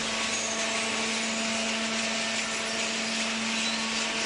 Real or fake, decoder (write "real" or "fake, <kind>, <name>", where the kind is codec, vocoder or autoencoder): real